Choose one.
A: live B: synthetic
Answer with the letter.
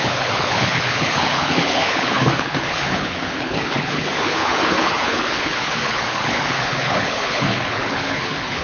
B